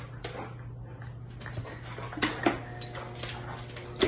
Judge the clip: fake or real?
real